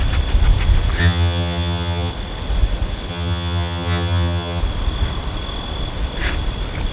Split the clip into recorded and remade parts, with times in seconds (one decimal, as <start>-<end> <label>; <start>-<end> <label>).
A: 0.0-1.0 recorded; 1.0-2.1 remade; 2.1-3.1 recorded; 3.1-4.6 remade; 4.6-6.9 recorded